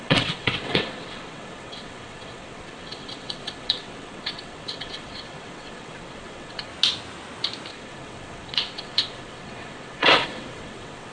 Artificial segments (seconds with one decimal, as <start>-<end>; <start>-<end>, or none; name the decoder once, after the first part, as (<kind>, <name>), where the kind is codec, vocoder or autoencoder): 0.0-6.7 (vocoder, WaveNeXt); 7.7-11.1